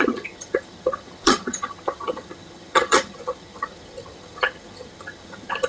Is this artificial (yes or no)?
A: yes